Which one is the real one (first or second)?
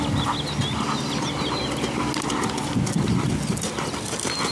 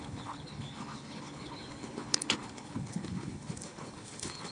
first